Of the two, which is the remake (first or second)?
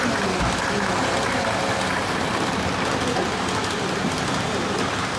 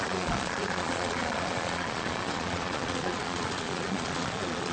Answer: second